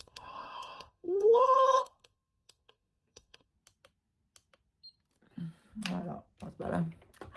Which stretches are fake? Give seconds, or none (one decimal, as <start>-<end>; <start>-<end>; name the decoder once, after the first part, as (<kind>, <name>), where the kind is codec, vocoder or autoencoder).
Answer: 0.0-3.5 (codec, SNAC)